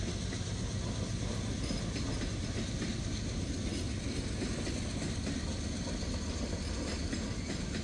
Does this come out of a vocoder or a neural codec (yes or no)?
no